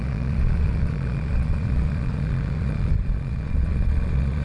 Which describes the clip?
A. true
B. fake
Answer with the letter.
B